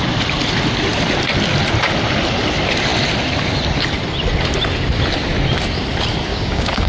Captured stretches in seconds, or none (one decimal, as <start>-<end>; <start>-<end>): 0.0-6.3